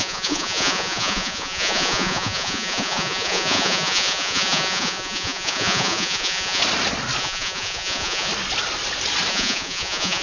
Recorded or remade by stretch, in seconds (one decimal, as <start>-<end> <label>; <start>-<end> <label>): 0.0-6.6 remade; 6.6-7.2 recorded; 7.2-8.3 remade; 8.3-9.3 recorded; 9.3-10.2 remade